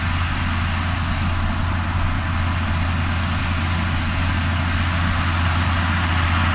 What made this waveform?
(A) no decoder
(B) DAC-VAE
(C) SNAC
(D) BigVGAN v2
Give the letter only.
A